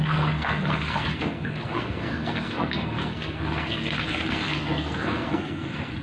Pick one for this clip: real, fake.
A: fake